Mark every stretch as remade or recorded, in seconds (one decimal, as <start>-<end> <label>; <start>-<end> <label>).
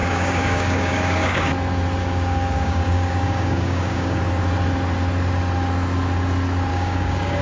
0.0-1.5 remade; 1.5-2.0 recorded; 2.0-4.2 remade; 4.2-6.7 recorded; 6.7-7.4 remade